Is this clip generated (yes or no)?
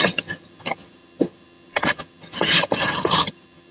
yes